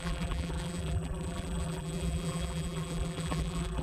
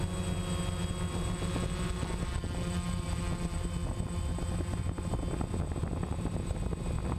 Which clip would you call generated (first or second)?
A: first